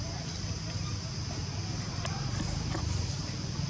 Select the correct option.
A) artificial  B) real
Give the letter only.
B